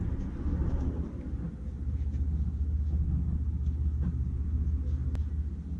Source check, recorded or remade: recorded